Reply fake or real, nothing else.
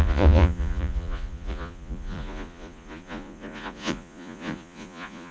fake